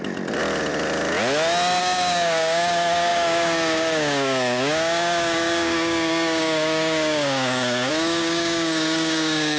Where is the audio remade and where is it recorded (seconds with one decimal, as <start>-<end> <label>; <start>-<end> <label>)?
0.0-1.8 recorded; 1.8-9.6 remade